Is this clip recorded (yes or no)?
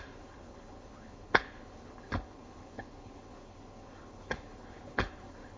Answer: no